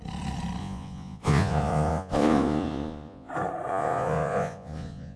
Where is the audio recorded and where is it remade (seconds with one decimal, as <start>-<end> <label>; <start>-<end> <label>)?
0.0-0.6 recorded; 0.6-3.3 remade; 3.3-3.7 recorded; 3.7-5.2 remade